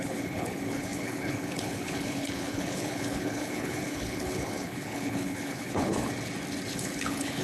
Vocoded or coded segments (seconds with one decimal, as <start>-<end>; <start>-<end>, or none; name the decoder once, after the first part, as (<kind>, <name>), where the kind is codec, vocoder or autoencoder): 0.0-6.1 (codec, HILCodec); 6.7-7.4